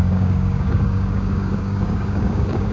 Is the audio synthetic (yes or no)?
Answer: yes